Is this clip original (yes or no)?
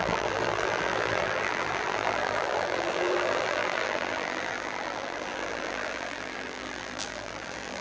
no